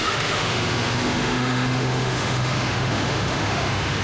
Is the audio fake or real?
fake